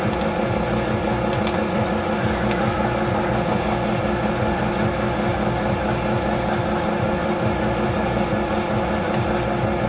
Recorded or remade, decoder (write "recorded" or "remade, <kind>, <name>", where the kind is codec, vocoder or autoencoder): recorded